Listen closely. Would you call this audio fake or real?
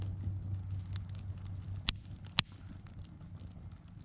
real